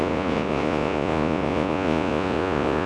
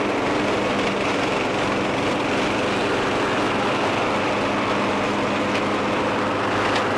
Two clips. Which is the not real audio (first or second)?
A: first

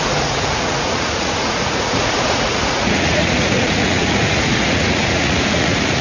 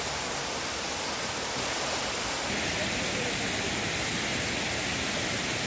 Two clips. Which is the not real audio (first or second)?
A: first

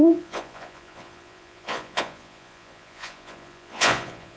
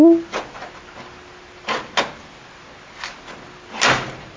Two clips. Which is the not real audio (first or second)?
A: first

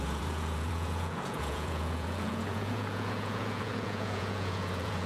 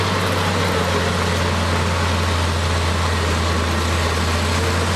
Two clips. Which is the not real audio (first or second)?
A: first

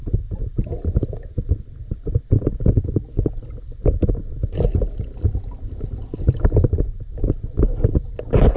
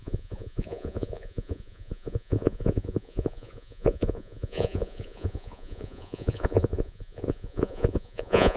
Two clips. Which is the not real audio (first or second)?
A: second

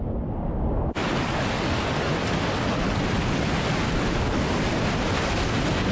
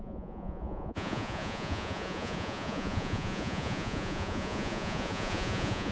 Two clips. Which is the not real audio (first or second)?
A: second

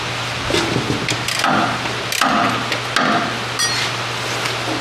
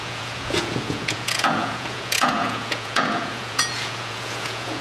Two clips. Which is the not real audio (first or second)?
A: second